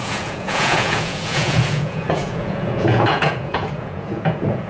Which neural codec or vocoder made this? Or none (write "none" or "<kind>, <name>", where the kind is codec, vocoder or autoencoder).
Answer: vocoder, Vocos